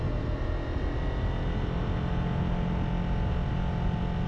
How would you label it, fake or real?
real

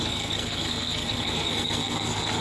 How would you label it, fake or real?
fake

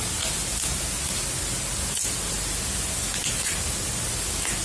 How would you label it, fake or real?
real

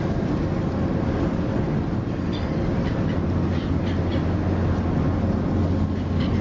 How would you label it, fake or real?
real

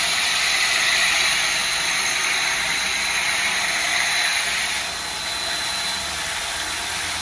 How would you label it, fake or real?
real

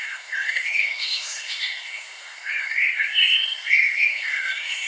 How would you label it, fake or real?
fake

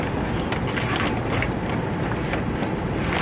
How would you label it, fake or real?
real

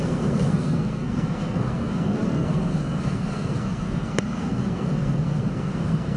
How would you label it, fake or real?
fake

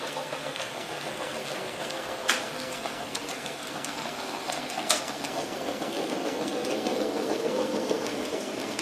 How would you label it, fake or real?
fake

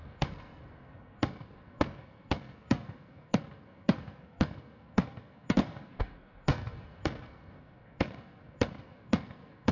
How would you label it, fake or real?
fake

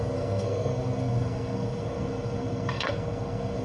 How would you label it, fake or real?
fake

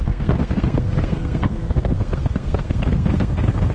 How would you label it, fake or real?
fake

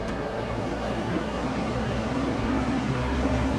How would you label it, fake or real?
fake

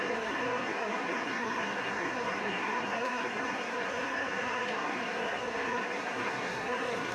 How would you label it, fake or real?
fake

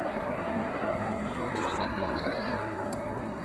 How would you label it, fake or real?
fake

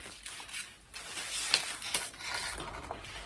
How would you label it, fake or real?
real